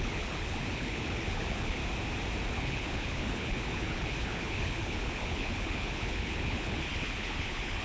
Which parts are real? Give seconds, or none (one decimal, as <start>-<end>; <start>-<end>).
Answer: 1.8-2.5